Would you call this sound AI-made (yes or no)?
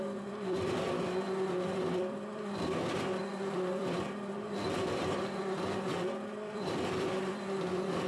yes